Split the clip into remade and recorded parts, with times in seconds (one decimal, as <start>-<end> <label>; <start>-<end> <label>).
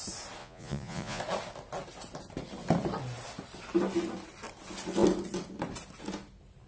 0.0-0.4 recorded; 0.4-1.2 remade; 1.2-6.7 recorded